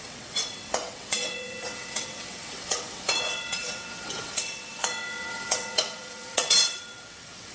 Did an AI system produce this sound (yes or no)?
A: yes